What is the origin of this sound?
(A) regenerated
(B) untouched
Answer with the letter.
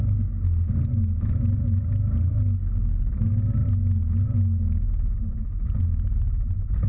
B